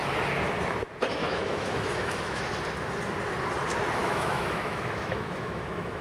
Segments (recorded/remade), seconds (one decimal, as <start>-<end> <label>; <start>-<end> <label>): 0.0-1.2 recorded; 1.2-2.4 remade; 2.4-4.0 recorded; 4.0-6.0 remade